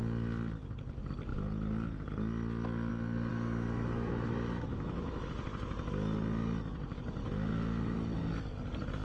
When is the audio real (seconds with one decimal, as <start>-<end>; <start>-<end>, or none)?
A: 0.0-3.3; 5.3-7.2; 8.2-9.0